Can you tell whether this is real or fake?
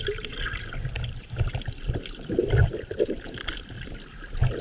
real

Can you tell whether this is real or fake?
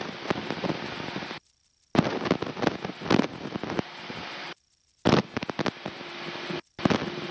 fake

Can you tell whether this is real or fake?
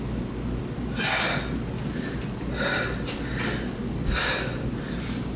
real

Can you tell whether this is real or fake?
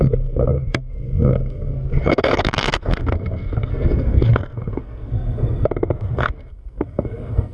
fake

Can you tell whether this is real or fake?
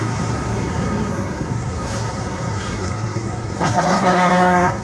fake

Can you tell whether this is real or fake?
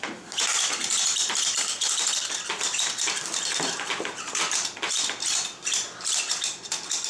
fake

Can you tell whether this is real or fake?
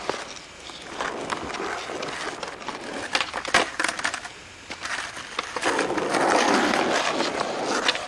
real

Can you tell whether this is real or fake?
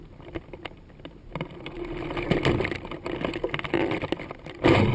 real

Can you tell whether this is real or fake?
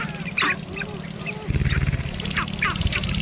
real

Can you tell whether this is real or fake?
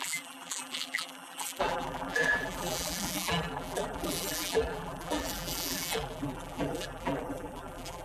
fake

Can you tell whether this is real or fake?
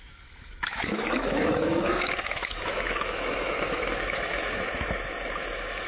fake